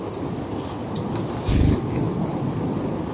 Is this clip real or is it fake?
real